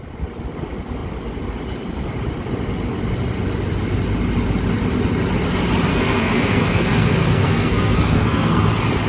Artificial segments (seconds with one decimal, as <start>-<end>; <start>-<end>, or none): 5.9-8.7